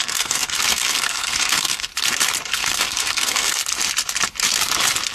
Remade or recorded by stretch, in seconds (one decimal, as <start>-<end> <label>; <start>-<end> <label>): 0.0-1.9 remade; 1.9-2.5 recorded; 2.5-3.6 remade; 3.6-5.1 recorded